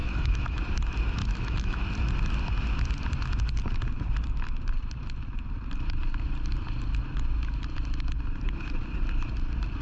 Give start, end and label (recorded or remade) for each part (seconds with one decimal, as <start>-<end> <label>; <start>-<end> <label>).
0.0-0.6 remade; 0.6-1.2 recorded; 1.2-1.8 remade; 1.8-9.8 recorded